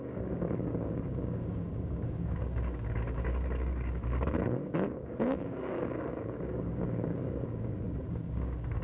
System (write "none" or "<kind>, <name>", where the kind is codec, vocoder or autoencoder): codec, DAC